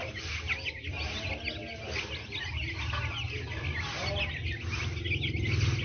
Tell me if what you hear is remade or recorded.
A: recorded